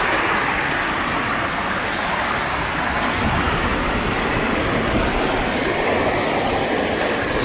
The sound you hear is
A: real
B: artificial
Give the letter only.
A